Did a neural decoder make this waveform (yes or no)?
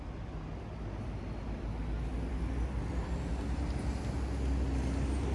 no